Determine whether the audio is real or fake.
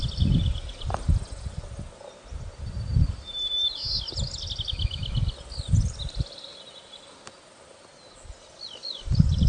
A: real